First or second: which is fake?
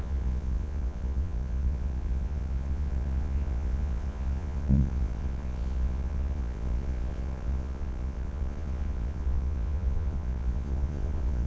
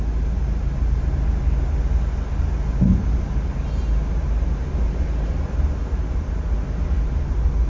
first